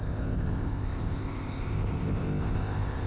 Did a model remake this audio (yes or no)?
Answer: yes